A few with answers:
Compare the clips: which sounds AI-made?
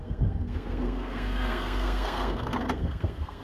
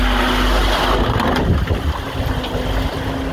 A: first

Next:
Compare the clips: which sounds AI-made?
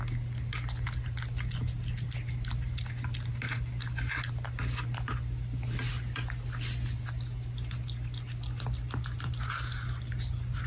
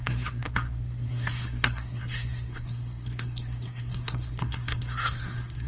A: second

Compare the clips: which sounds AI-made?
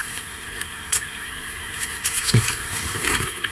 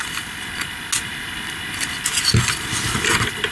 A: first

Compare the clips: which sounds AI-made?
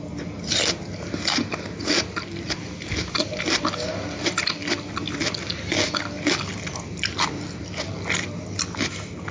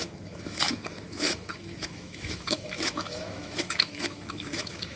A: second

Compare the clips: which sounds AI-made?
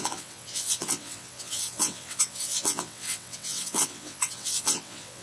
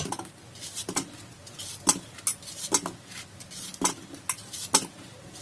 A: first